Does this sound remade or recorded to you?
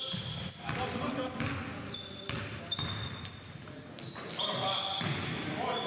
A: recorded